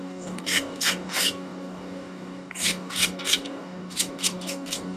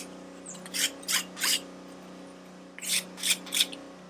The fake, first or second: first